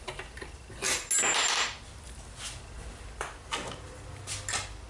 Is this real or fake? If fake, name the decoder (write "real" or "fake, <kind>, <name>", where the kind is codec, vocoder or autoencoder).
real